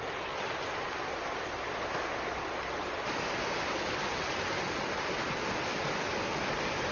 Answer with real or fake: real